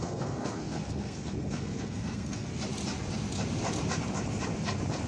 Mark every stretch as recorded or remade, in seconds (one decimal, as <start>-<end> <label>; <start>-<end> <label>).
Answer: 0.0-2.5 remade; 2.5-5.1 recorded